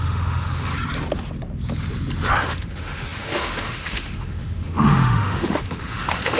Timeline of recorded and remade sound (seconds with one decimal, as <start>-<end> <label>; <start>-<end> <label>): 0.0-0.7 remade; 0.7-2.4 recorded; 2.4-6.4 remade